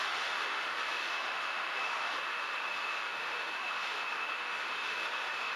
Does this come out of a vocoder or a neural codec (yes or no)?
yes